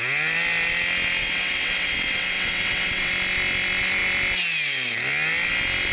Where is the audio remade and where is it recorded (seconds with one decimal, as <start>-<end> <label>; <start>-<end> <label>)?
0.0-1.2 recorded; 1.2-3.1 remade; 3.1-5.9 recorded

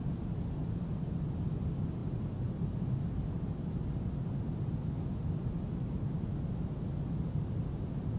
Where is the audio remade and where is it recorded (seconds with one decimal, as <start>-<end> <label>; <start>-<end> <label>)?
0.0-8.2 recorded

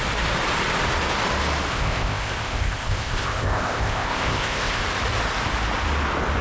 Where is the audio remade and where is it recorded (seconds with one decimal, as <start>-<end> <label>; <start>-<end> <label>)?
0.0-1.7 recorded; 1.7-4.8 remade; 4.8-6.4 recorded

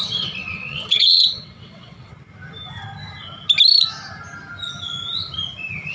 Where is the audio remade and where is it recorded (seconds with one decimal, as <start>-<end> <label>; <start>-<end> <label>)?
0.0-2.1 remade; 2.1-5.9 recorded

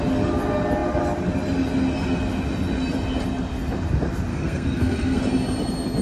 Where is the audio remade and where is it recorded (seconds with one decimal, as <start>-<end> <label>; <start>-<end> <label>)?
0.0-4.3 recorded; 4.3-5.2 remade; 5.2-6.0 recorded

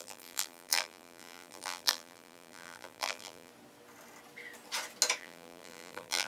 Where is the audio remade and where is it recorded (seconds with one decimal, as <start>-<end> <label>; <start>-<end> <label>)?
0.0-3.5 remade; 3.5-5.2 recorded; 5.2-6.3 remade